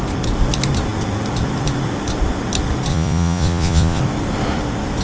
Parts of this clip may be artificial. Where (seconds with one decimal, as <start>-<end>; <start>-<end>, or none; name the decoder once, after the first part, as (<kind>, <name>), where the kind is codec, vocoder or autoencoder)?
2.9-4.0 (vocoder, Vocos)